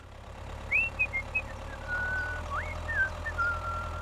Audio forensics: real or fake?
fake